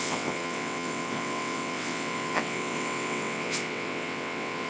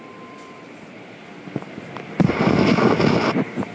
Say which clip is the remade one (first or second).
first